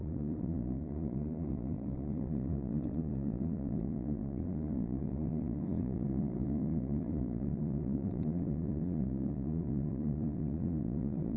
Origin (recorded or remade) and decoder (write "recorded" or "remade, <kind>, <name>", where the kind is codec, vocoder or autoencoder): remade, vocoder, Vocos